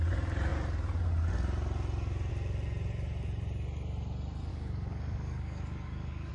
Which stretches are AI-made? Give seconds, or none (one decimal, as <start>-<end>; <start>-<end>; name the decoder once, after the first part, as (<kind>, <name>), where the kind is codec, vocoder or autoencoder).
4.5-6.3 (codec, DAC)